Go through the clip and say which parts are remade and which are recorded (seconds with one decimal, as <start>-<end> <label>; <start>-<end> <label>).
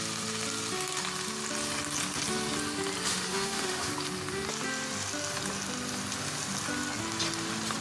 0.0-3.1 recorded; 3.1-3.9 remade; 3.9-7.8 recorded